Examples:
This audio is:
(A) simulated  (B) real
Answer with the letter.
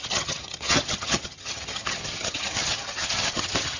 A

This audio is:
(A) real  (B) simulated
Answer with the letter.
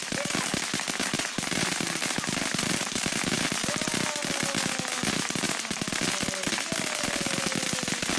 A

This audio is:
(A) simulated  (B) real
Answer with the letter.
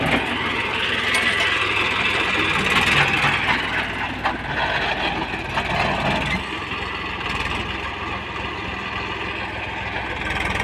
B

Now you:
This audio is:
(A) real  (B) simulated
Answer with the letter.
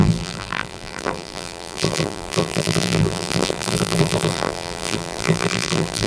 B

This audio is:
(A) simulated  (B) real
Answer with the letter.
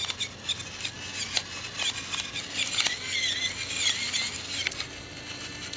B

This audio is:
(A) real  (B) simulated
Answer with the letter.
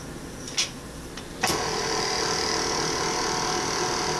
A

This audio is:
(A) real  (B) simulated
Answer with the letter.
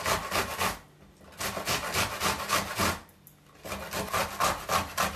A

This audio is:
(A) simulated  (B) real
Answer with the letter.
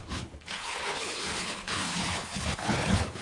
A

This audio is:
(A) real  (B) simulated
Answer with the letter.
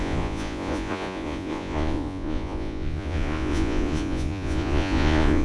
B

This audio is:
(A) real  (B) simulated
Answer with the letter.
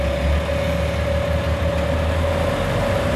A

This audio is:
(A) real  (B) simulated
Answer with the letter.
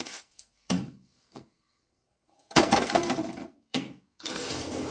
B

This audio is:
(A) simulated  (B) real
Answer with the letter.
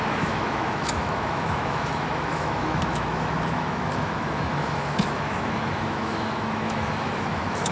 A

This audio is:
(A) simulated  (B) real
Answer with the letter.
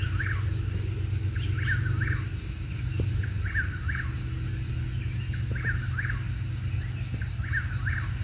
B